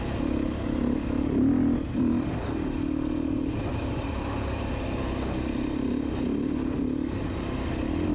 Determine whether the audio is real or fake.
real